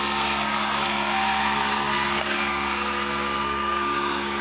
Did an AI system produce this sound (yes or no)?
yes